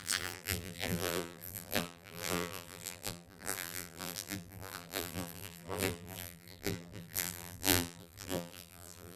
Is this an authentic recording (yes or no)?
no